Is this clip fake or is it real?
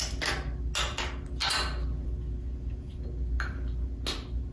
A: real